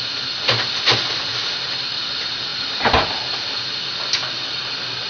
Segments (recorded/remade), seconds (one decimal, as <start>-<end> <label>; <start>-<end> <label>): 0.0-1.4 recorded; 1.4-2.1 remade; 2.1-2.5 recorded; 2.5-3.6 remade; 3.6-4.2 recorded; 4.2-5.1 remade